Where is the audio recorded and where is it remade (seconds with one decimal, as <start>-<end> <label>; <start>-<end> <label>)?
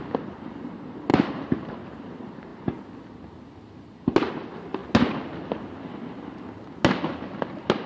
0.0-1.1 recorded; 1.1-1.7 remade; 1.7-7.9 recorded